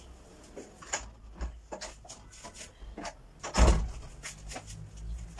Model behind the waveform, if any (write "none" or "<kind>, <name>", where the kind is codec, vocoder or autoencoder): none